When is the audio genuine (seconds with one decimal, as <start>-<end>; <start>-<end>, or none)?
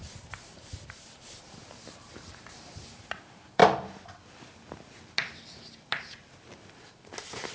3.6-6.7